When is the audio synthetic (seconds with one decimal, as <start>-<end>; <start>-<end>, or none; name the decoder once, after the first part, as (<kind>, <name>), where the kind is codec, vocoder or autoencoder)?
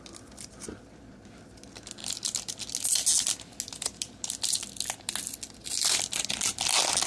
none